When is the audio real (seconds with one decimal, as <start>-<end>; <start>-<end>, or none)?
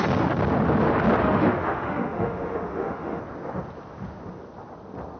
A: 0.0-1.2; 3.2-5.2